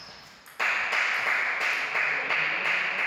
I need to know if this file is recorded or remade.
recorded